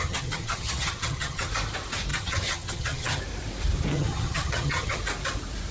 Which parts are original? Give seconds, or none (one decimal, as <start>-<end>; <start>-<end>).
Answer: 1.5-2.1; 3.2-3.9; 5.0-5.7